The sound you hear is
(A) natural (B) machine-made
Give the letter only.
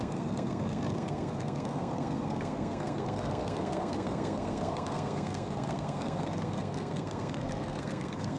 B